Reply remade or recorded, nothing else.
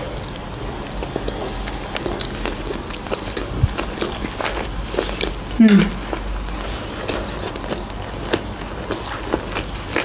recorded